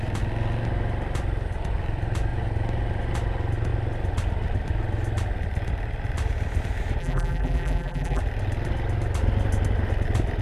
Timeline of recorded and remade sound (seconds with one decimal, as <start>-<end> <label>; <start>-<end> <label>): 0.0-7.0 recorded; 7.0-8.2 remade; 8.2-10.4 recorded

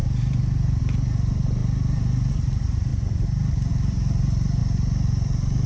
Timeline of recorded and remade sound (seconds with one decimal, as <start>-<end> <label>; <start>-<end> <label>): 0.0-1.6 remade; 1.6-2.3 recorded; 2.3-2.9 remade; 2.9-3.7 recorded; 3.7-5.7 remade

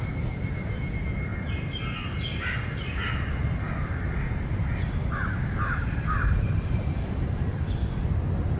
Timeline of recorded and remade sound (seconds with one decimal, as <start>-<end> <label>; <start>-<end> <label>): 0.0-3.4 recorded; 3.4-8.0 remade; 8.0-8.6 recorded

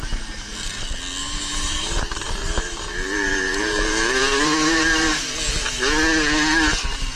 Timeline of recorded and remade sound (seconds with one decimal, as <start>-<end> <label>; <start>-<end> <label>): 0.0-1.2 recorded; 1.2-5.2 remade; 5.2-7.2 recorded

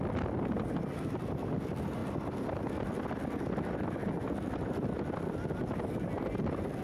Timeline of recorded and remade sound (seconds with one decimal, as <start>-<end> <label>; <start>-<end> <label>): 0.0-6.8 recorded

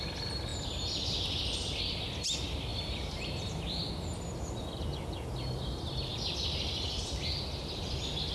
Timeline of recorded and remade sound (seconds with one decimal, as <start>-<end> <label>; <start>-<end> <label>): 0.0-2.7 recorded; 2.7-3.9 remade; 3.9-8.3 recorded